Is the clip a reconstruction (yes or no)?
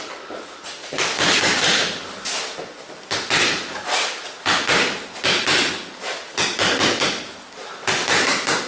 no